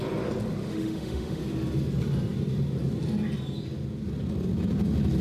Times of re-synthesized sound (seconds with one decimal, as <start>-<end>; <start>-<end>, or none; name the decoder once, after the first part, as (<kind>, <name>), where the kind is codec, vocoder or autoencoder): 0.6-1.4 (autoencoder, DAC-VAE)